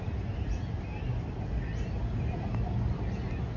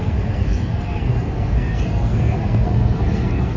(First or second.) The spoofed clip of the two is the second